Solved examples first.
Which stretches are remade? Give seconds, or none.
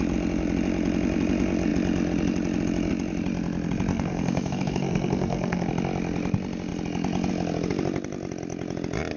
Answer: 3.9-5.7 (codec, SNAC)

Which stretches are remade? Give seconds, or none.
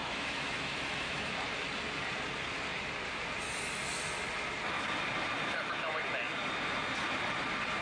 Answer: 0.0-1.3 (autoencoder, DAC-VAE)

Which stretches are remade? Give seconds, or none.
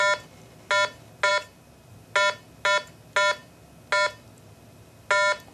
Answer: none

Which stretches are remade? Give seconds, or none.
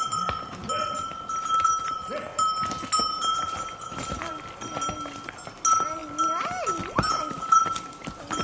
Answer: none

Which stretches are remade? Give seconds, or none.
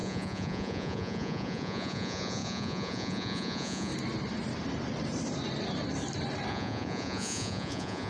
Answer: 0.0-3.9 (vocoder, Vocos); 6.5-8.1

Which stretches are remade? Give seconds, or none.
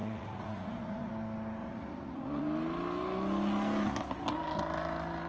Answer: 0.0-1.1 (vocoder, Vocos); 1.6-2.4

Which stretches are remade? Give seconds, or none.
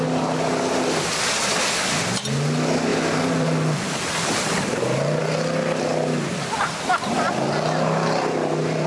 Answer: 2.9-5.2 (vocoder, BigVGAN v2)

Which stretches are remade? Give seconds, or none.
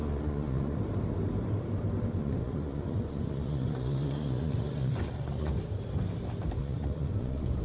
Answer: 0.0-0.8 (vocoder, Vocos); 2.2-5.5; 6.6-7.6